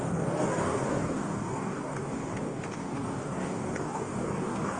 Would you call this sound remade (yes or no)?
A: yes